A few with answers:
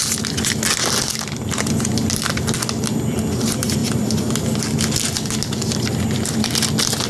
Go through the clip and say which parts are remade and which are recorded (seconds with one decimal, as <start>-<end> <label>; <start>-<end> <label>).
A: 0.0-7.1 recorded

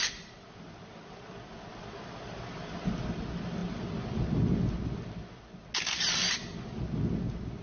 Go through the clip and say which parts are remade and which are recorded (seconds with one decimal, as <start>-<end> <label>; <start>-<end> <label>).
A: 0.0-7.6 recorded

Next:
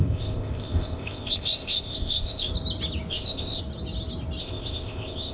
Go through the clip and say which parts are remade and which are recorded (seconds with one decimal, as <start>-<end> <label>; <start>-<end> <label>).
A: 0.0-2.5 remade; 2.5-3.1 recorded; 3.1-3.6 remade; 3.6-4.4 recorded; 4.4-5.3 remade

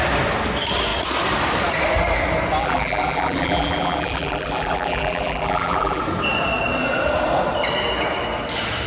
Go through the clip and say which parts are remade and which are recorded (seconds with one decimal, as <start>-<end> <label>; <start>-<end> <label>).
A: 0.0-2.6 recorded; 2.6-6.0 remade; 6.0-8.9 recorded

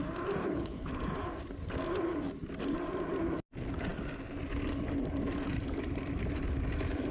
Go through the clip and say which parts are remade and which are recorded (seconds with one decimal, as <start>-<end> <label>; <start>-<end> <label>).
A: 0.0-0.4 recorded; 0.4-1.0 remade; 1.0-7.1 recorded